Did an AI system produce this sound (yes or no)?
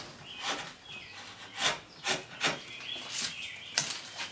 no